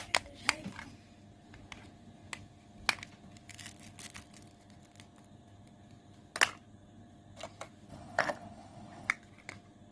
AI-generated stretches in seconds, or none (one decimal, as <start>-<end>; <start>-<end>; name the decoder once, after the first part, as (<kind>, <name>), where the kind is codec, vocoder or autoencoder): 7.9-9.1 (codec, HILCodec)